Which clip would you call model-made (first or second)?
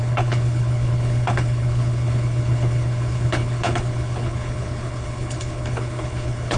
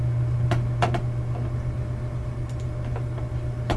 first